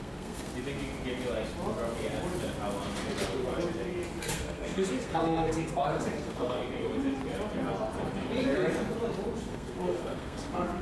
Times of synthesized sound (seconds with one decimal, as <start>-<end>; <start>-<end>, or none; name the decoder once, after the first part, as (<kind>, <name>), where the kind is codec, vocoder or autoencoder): 0.0-0.5 (codec, SNAC); 4.2-6.6; 9.4-10.8